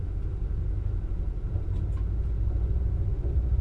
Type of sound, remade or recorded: recorded